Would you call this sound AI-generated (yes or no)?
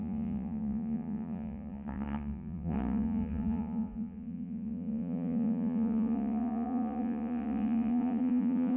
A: yes